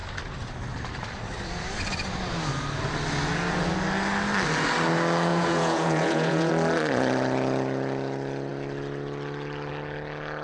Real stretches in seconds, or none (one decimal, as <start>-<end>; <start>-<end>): 0.0-5.3; 6.5-10.4